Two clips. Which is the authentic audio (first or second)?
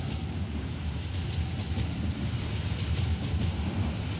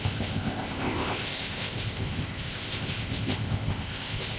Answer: first